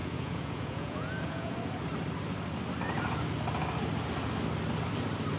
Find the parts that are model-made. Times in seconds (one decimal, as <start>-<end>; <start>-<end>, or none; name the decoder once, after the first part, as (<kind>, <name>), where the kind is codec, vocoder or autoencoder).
0.0-1.5 (vocoder, Vocos)